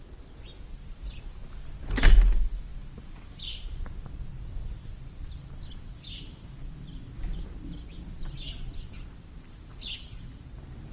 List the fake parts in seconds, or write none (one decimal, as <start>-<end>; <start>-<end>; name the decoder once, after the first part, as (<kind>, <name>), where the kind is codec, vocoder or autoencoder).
none